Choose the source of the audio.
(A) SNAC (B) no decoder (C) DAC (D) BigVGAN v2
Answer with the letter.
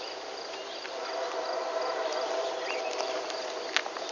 D